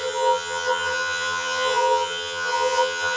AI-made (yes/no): yes